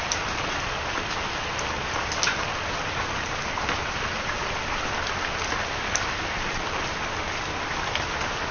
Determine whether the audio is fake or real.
real